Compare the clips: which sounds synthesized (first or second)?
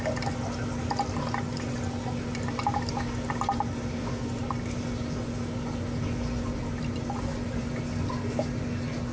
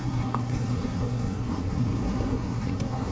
second